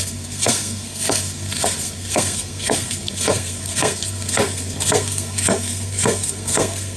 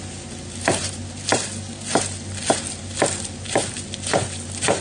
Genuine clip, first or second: second